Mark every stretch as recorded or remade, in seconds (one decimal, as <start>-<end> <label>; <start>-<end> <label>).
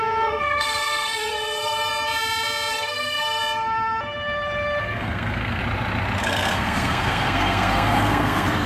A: 0.0-1.9 remade; 1.9-2.7 recorded; 2.7-3.4 remade; 3.4-4.8 recorded; 4.8-5.6 remade; 5.6-6.2 recorded; 6.2-8.7 remade